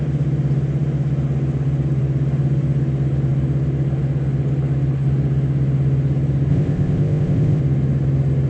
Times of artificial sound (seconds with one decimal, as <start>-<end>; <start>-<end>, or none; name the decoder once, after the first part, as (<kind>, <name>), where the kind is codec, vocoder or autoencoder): 6.5-7.6 (codec, ZipCodec)

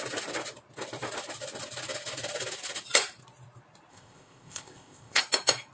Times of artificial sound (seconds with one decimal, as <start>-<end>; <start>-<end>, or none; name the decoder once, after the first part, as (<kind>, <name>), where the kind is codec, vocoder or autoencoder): 3.9-5.2 (codec, ZipCodec)

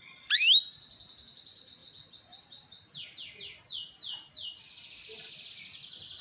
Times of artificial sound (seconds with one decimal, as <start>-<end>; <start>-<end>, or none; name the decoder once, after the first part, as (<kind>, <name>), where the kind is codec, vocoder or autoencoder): none

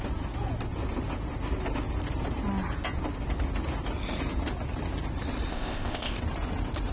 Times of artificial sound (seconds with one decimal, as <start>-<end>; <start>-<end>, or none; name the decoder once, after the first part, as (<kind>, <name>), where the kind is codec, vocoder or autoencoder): 5.5-6.2 (codec, ZipCodec)